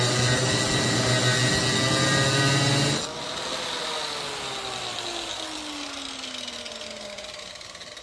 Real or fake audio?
real